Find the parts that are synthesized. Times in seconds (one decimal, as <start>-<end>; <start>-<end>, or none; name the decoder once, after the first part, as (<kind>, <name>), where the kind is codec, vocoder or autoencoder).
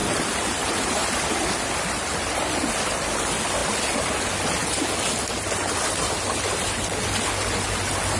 0.0-2.7 (vocoder, BigVGAN v2); 3.6-4.1